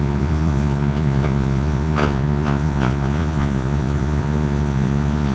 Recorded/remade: remade